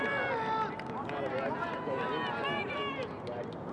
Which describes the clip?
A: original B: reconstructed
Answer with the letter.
A